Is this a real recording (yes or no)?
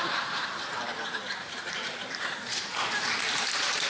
no